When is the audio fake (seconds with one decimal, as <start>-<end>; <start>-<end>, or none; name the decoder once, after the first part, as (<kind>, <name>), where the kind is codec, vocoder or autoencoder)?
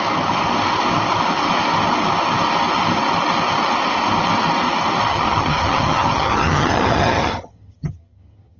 5.1-8.6 (vocoder, HiFi-GAN)